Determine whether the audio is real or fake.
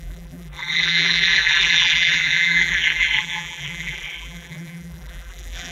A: fake